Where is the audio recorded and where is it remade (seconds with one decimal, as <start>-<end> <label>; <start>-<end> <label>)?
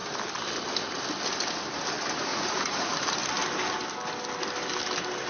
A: 0.0-2.3 recorded; 2.3-2.9 remade; 2.9-5.3 recorded